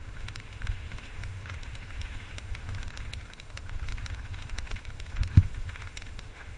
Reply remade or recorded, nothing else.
remade